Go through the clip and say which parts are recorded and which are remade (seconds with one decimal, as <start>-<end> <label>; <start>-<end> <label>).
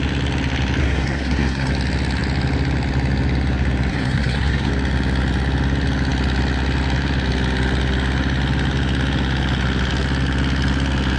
0.0-0.8 recorded; 0.8-1.7 remade; 1.7-3.9 recorded; 3.9-4.7 remade; 4.7-11.2 recorded